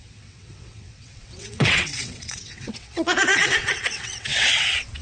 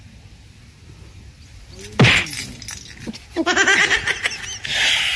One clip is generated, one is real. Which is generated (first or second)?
first